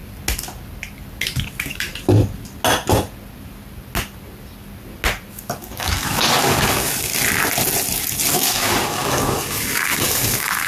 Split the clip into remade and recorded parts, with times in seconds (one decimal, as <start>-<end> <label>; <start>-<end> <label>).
0.0-1.5 recorded; 1.5-1.9 remade; 1.9-5.3 recorded; 5.3-7.1 remade; 7.1-8.3 recorded; 8.3-10.7 remade